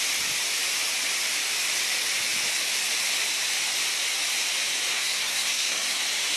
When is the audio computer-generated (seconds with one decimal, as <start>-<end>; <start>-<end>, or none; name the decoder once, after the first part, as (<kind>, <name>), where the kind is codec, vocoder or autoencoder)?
4.9-6.0 (codec, SNAC)